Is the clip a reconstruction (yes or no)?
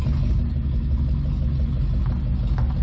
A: no